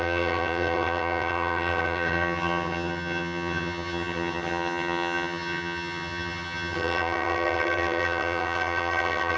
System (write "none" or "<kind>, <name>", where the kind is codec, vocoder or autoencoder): vocoder, HiFi-GAN